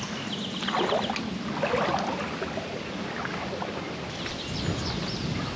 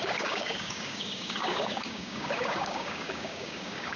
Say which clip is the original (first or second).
first